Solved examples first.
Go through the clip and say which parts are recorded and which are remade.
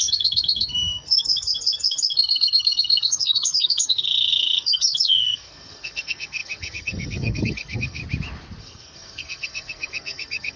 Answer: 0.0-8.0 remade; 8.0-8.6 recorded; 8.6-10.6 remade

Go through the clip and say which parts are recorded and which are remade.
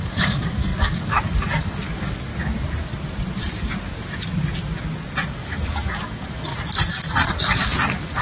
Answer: 0.0-2.3 remade; 2.3-5.3 recorded; 5.3-6.5 remade; 6.5-7.6 recorded; 7.6-8.2 remade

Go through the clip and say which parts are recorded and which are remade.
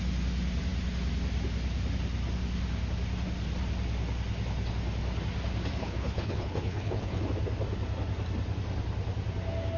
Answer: 0.0-5.8 recorded; 5.8-7.2 remade; 7.2-9.8 recorded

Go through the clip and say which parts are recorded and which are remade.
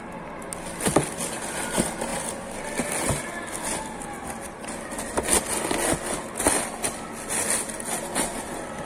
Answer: 0.0-8.9 recorded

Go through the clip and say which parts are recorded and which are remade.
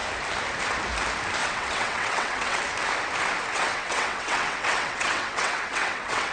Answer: 0.0-1.4 recorded; 1.4-2.6 remade; 2.6-3.5 recorded; 3.5-6.3 remade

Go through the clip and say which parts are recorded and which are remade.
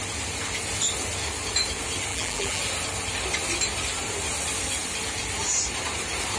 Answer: 0.0-2.1 recorded; 2.1-2.6 remade; 2.6-6.4 recorded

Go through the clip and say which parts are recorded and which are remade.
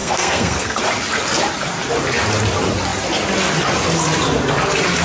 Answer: 0.0-0.8 remade; 0.8-5.0 recorded